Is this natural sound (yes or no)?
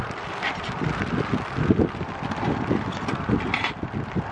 yes